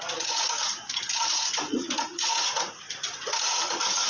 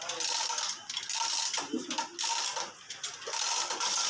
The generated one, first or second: first